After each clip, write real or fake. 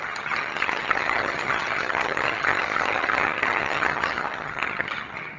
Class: fake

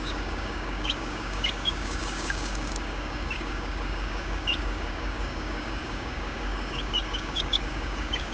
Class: fake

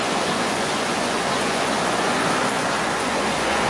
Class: fake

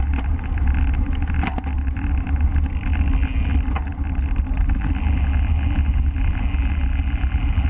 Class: real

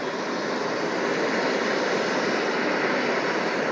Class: real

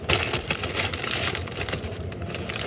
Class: fake